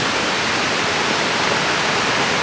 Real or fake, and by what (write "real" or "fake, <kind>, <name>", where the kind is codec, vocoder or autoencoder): real